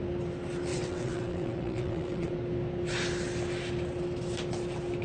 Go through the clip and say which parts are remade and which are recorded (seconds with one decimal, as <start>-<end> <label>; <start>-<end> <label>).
0.0-0.7 recorded; 0.7-2.3 remade; 2.3-5.0 recorded